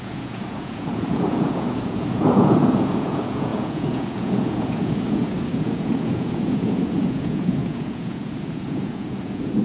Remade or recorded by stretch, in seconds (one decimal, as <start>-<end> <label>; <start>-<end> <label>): 0.0-9.6 remade